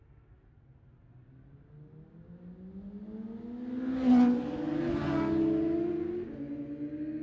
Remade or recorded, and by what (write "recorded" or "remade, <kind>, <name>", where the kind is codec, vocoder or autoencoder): recorded